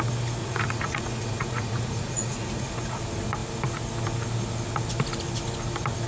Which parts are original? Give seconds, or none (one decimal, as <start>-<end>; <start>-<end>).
0.0-0.4; 3.0-6.1